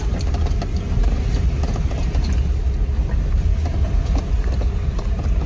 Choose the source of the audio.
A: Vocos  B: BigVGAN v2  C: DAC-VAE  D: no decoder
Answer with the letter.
B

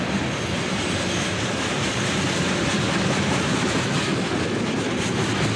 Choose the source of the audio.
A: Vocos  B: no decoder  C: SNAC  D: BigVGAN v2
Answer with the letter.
B